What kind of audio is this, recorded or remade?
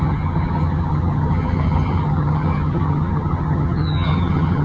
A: remade